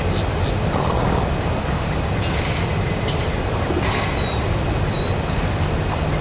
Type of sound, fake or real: real